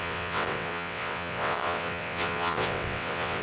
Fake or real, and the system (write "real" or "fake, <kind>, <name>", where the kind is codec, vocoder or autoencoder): fake, vocoder, WaveNeXt